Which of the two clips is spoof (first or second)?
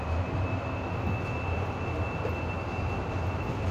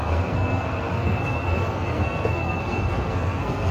second